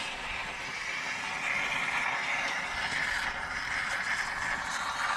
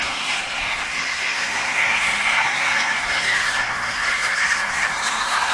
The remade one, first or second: second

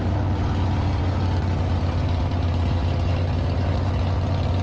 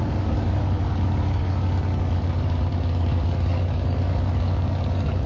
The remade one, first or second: second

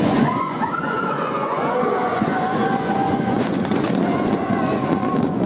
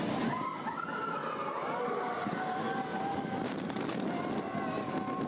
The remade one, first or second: first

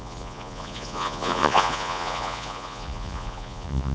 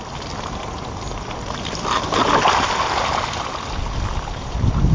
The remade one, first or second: first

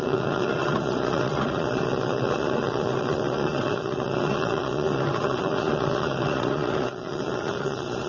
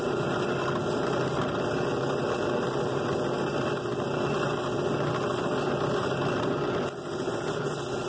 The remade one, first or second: first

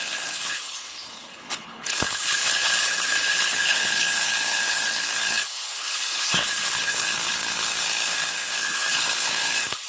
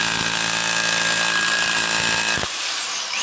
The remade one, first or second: first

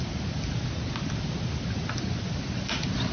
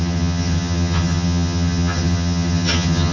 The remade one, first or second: second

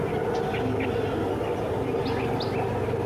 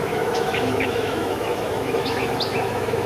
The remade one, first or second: second